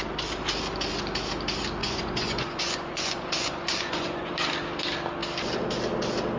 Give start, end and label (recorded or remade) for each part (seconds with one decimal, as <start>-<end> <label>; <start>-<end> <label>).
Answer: 0.0-1.8 recorded; 1.8-4.3 remade; 4.3-6.4 recorded